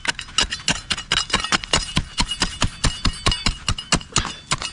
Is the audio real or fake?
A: real